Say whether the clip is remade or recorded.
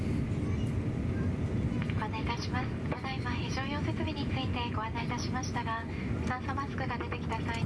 recorded